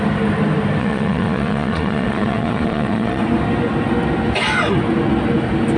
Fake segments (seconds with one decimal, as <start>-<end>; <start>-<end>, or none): 0.8-3.2